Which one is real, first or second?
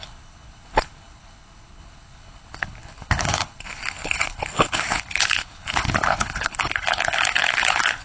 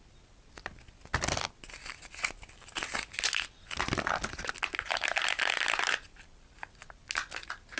second